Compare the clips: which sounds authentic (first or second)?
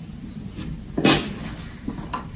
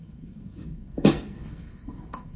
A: first